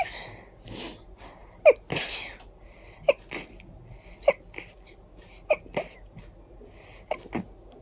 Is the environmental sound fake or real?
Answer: real